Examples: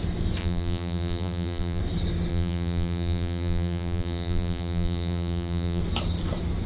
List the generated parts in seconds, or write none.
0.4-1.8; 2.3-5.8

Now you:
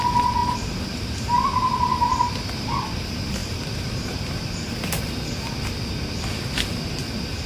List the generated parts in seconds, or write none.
0.4-2.3; 3.4-4.7

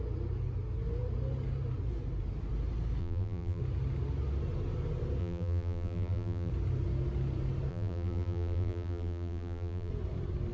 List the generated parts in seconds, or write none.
3.0-3.6; 5.2-6.5; 7.7-9.9

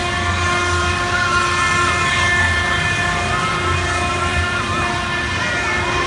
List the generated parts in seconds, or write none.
4.3-4.8

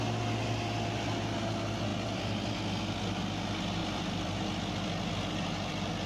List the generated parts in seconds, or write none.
1.9-2.5; 3.8-4.7